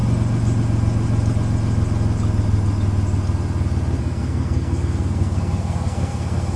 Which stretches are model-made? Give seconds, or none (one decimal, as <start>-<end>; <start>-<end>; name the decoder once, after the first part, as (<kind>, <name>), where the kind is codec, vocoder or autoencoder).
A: 4.0-6.6 (codec, SNAC)